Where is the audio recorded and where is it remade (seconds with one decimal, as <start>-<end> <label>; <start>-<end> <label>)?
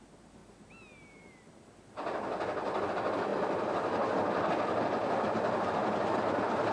0.0-6.7 recorded